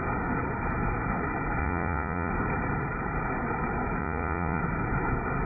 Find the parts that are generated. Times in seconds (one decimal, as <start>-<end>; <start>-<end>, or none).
1.6-2.3; 4.0-4.6